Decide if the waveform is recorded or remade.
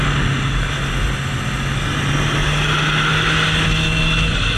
recorded